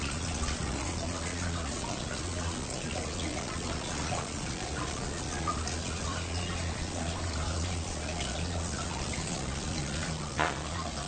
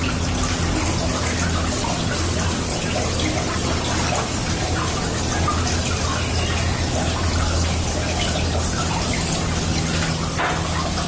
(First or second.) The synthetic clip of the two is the first